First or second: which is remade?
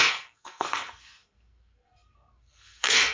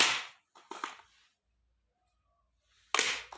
first